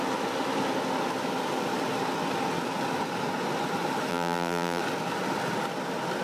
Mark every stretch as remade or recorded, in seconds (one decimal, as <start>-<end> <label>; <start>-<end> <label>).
0.0-4.1 recorded; 4.1-4.8 remade; 4.8-6.2 recorded